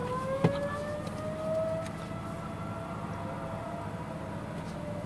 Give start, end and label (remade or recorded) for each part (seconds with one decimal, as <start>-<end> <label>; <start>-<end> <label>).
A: 0.0-5.1 recorded